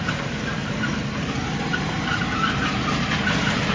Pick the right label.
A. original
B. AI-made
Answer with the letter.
B